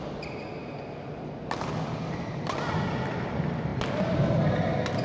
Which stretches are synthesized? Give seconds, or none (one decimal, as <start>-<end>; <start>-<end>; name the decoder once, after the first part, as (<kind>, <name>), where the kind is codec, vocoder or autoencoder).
none